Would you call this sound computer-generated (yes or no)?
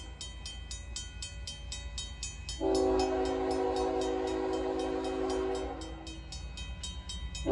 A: no